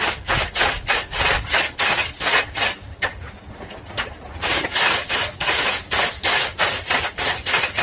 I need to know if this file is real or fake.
real